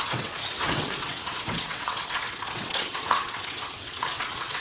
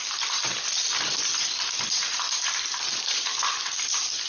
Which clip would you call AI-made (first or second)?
first